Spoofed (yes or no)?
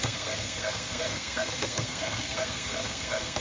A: yes